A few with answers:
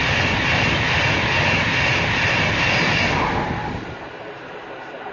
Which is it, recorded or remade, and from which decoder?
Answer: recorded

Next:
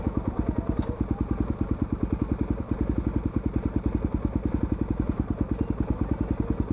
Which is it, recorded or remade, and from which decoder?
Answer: recorded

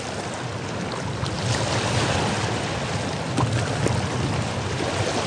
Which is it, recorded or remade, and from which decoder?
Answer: recorded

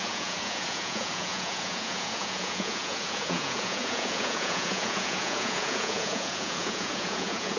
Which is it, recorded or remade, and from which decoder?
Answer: remade, vocoder, Vocos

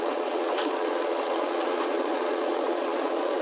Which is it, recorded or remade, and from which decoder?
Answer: remade, vocoder, Vocos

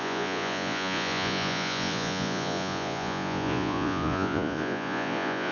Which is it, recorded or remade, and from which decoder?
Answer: remade, vocoder, Vocos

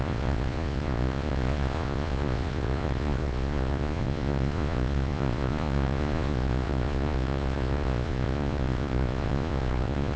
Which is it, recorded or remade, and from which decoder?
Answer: remade, vocoder, Vocos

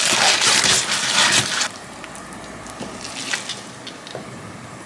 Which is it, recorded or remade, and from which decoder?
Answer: recorded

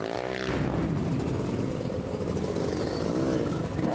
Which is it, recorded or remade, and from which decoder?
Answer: recorded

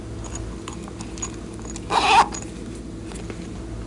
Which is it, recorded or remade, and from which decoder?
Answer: recorded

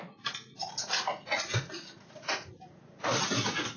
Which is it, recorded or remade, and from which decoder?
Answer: remade, vocoder, Vocos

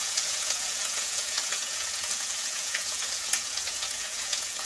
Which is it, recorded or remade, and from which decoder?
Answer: remade, vocoder, Vocos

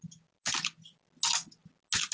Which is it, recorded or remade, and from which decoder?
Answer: recorded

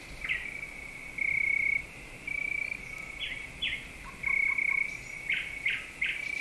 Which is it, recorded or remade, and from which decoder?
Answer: recorded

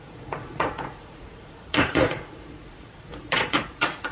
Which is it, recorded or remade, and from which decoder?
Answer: remade, vocoder, Vocos